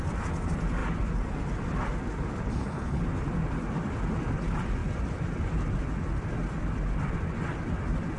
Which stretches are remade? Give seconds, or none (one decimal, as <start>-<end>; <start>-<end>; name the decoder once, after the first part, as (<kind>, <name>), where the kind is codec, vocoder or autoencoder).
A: 2.5-3.0 (codec, HILCodec)